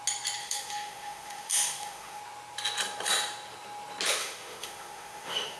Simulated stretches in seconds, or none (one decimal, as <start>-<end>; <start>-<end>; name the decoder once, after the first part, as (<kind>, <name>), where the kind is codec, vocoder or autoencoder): 0.4-2.2 (autoencoder, DAC-VAE); 4.2-5.6